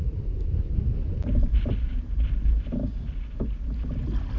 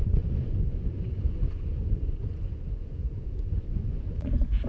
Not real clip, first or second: second